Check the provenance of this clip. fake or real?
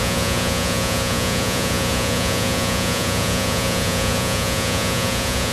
fake